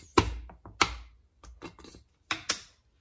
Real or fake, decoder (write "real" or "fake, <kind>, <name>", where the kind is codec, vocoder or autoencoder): real